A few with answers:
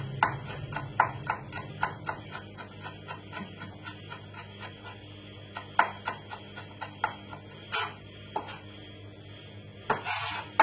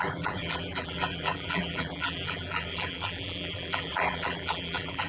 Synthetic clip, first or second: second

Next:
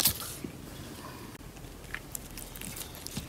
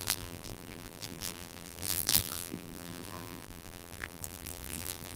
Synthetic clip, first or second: second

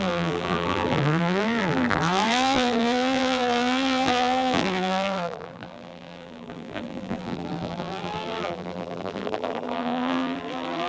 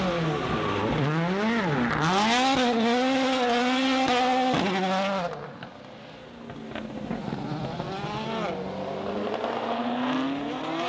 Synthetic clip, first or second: first